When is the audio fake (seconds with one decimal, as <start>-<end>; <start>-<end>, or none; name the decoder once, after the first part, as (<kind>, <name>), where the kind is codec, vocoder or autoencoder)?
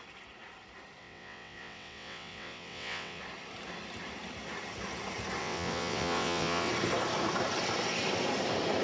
1.0-3.2 (vocoder, WaveNeXt); 5.4-6.7